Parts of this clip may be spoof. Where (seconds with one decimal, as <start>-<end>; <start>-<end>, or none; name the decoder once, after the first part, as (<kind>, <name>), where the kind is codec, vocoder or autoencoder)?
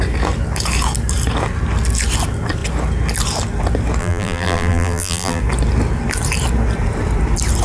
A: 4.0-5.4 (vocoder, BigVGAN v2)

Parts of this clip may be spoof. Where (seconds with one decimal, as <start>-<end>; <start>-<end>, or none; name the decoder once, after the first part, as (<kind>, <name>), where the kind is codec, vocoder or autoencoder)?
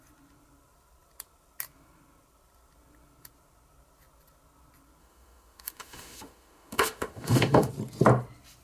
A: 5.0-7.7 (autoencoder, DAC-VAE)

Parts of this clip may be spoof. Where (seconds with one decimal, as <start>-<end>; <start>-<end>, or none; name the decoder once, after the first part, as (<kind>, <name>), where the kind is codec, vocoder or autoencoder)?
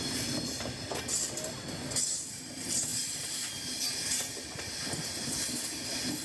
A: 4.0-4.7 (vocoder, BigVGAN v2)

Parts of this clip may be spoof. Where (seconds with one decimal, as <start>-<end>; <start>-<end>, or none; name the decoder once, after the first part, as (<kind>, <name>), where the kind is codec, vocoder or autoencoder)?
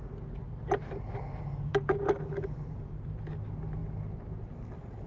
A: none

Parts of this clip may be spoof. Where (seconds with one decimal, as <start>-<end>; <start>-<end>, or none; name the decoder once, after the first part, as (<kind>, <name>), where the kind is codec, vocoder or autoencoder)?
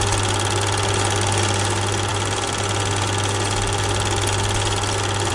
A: none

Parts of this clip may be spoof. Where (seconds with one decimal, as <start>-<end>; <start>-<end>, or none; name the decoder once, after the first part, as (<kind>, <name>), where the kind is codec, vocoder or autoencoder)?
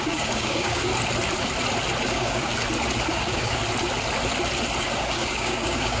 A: 0.0-0.9 (codec, DAC); 2.1-2.5; 3.1-3.6; 4.8-6.0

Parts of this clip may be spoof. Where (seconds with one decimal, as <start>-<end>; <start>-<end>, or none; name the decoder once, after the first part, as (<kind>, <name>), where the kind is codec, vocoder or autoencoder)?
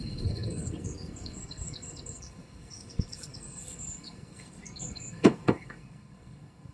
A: 0.0-6.7 (codec, SNAC)